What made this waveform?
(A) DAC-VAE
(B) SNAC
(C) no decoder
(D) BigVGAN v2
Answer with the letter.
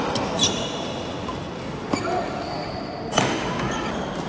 C